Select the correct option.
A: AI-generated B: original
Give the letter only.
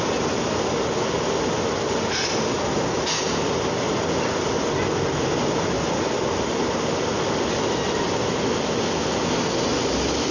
B